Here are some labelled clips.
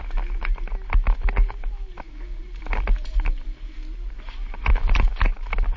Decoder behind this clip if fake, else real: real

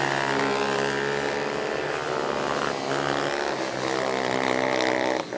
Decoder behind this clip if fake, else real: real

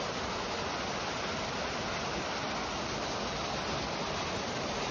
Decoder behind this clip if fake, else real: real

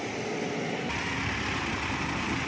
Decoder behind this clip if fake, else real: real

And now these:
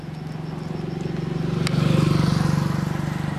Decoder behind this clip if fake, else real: real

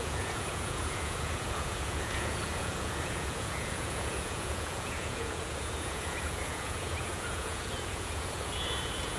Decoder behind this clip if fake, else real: fake, vocoder, Vocos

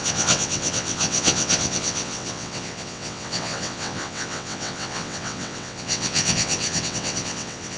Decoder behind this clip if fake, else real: fake, vocoder, WaveNeXt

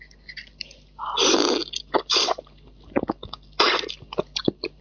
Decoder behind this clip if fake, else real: real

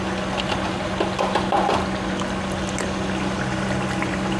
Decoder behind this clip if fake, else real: real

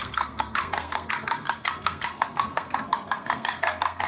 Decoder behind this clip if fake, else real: fake, codec, SNAC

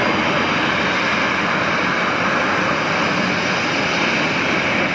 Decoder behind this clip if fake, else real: real